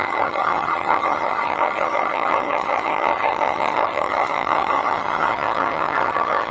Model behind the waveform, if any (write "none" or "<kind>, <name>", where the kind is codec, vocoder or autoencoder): vocoder, HiFi-GAN